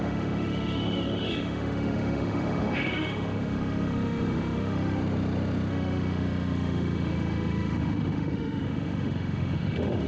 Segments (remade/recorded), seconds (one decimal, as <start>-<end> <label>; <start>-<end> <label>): 0.0-5.0 remade; 5.0-5.7 recorded; 5.7-10.1 remade